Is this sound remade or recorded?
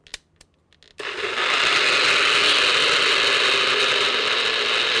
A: recorded